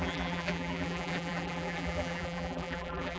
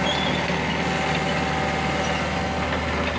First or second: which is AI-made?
first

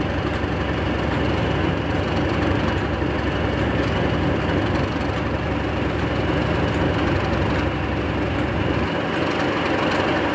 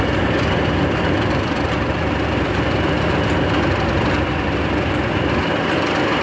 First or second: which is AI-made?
second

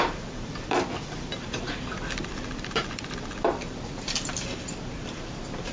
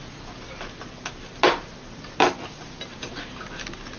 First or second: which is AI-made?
first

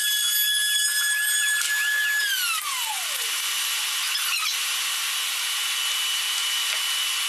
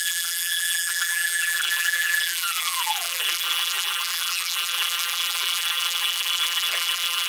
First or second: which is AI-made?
second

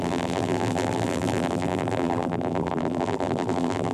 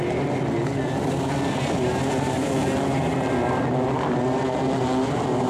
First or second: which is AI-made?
first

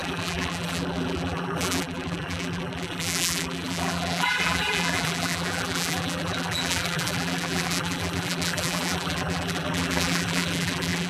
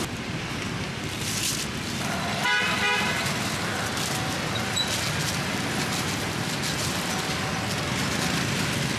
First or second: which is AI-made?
first